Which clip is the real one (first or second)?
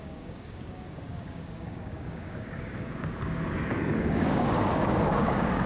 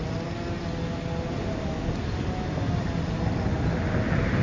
second